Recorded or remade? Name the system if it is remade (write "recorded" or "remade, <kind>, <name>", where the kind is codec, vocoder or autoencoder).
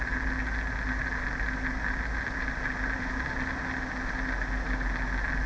recorded